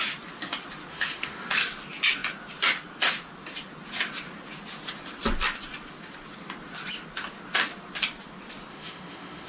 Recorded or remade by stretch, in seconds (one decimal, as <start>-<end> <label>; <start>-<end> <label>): 0.0-0.9 recorded; 0.9-1.5 remade; 1.5-8.7 recorded; 8.7-9.5 remade